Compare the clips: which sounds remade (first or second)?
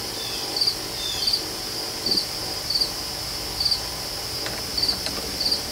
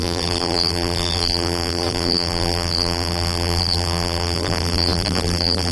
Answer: second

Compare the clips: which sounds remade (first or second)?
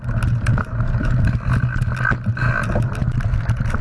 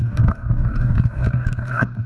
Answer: second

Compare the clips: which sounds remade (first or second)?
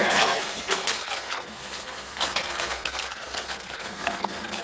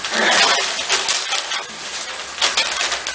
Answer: first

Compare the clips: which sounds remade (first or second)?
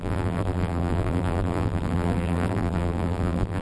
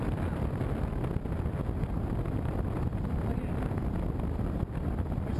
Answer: first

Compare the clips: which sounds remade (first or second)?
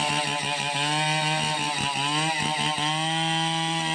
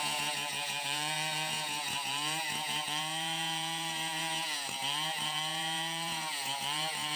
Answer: second